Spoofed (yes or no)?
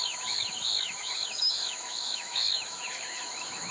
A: yes